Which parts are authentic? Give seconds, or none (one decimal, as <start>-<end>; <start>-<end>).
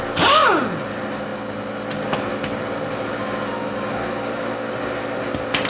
0.0-5.7